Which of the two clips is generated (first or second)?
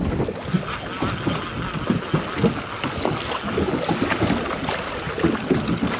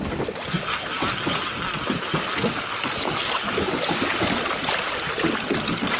second